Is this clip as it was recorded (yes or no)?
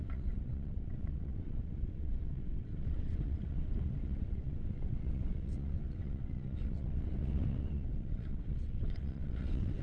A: no